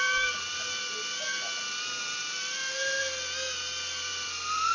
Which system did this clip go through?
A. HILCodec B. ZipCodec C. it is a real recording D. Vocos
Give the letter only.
C